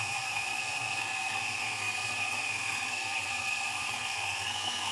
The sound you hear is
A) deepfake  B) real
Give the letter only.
A